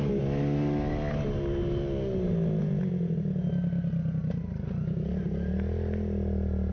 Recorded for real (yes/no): yes